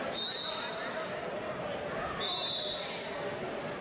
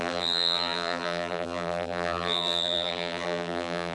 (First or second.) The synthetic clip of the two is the second